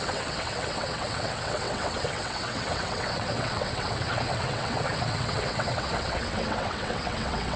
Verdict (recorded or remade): remade